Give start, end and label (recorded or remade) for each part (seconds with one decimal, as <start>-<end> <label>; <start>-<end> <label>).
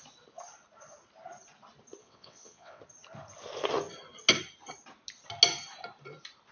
0.0-2.0 recorded; 2.0-2.8 remade; 2.8-6.5 recorded